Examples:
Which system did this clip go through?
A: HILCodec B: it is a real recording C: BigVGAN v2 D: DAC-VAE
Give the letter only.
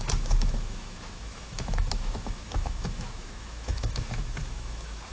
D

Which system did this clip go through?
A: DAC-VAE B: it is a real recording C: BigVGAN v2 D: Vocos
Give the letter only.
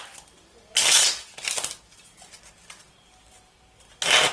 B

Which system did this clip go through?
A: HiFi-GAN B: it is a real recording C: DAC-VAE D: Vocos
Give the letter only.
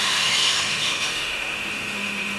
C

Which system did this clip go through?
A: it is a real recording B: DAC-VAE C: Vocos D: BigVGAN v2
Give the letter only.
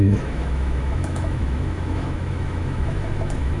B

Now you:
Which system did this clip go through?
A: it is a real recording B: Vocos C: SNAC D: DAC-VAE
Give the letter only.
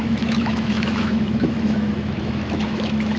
D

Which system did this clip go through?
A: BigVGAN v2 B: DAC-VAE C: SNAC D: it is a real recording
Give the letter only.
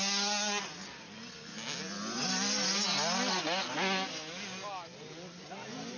D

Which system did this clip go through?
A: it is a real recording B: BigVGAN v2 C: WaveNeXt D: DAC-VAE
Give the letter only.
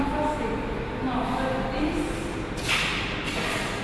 A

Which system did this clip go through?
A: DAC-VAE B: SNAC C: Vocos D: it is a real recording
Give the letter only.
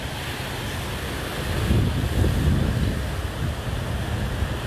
D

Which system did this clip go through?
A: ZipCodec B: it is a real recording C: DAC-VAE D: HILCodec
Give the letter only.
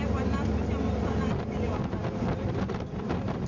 B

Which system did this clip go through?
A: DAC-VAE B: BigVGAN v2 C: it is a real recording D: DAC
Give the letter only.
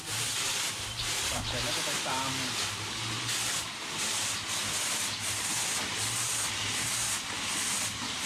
C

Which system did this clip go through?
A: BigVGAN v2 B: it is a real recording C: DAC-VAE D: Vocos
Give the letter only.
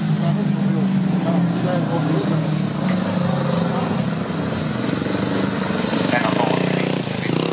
B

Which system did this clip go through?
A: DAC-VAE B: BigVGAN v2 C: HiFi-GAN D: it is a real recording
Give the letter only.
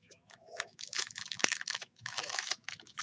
A